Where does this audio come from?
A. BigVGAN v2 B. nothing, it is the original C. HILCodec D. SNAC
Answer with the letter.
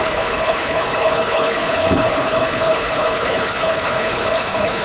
C